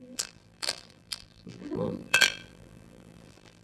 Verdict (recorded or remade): remade